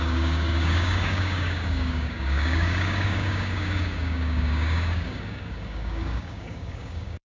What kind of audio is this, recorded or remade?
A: remade